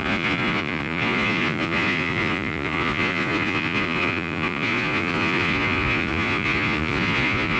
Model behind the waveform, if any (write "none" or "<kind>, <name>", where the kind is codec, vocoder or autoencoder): vocoder, Vocos